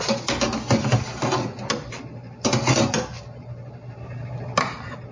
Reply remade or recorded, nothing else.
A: recorded